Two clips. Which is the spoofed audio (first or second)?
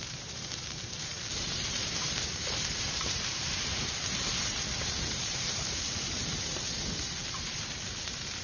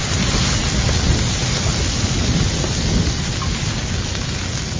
first